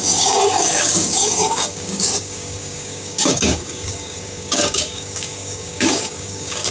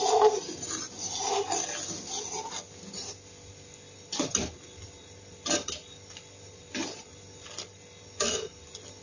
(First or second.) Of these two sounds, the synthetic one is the first